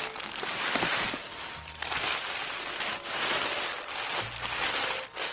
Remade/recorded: recorded